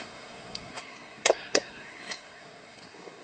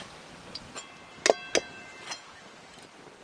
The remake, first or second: first